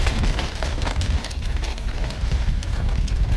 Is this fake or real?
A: fake